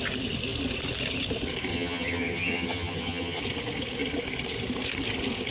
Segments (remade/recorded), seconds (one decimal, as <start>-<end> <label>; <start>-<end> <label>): 0.0-1.7 recorded; 1.7-3.4 remade; 3.4-5.5 recorded